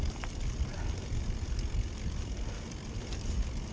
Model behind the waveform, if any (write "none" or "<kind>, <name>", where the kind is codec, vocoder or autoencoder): none